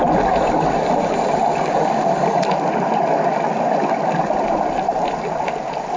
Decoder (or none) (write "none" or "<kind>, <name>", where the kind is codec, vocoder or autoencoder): none